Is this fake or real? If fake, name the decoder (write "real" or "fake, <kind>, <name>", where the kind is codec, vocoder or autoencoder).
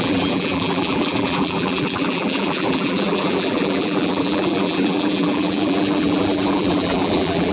fake, vocoder, BigVGAN v2